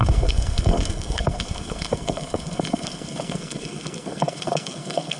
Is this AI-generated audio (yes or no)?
yes